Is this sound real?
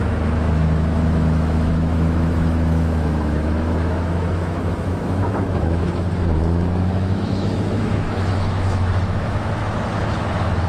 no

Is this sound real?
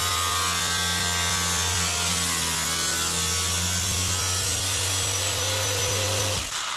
yes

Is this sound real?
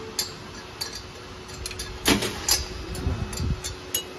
yes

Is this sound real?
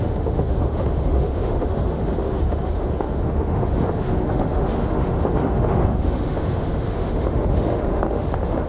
no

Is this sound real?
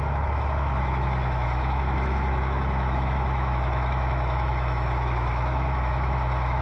no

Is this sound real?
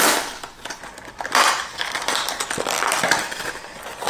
yes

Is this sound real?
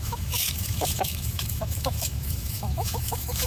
no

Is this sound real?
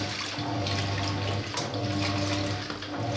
yes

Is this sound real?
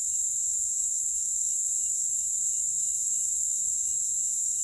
no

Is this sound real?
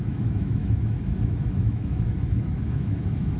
no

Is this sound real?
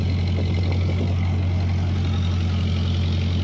yes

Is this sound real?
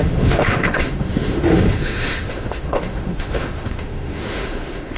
no